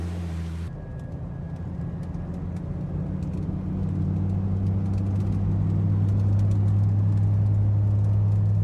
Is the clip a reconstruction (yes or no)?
no